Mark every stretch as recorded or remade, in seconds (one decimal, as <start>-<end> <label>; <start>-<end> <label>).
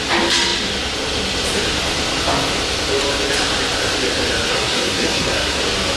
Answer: 0.0-4.5 recorded; 4.5-5.6 remade; 5.6-6.0 recorded